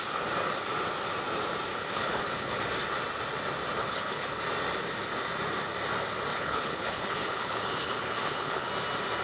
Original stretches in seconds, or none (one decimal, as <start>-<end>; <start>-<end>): 0.0-1.7; 2.6-3.8; 4.4-6.3; 8.7-9.2